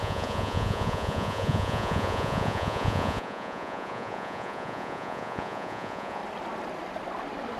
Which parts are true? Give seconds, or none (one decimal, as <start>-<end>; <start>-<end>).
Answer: 6.2-7.6